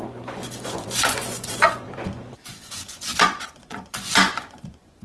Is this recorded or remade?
remade